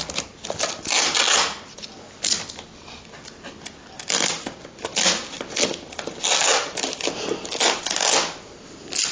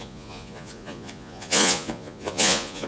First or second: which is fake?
second